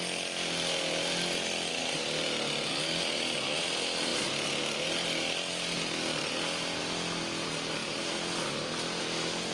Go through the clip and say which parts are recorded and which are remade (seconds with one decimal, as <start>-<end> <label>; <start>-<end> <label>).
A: 0.0-9.5 recorded